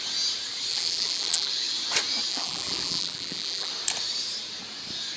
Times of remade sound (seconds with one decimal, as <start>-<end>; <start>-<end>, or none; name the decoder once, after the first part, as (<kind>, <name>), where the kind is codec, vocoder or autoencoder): 0.7-1.5 (vocoder, BigVGAN v2); 2.3-3.7